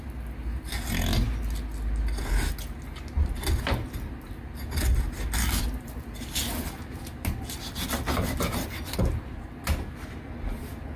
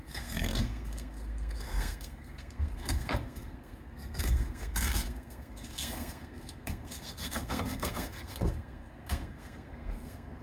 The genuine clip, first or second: first